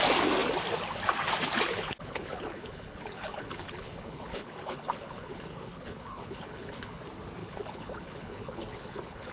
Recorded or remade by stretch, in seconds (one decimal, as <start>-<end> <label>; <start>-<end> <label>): 0.0-1.7 recorded; 1.7-7.0 remade; 7.0-7.4 recorded; 7.4-9.3 remade